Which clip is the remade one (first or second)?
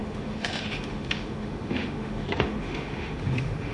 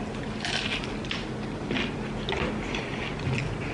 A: first